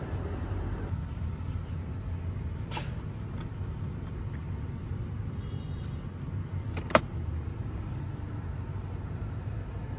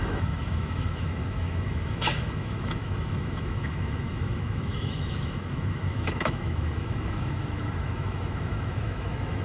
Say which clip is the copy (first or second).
second